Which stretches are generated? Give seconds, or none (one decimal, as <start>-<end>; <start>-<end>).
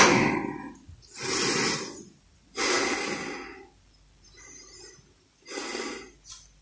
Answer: none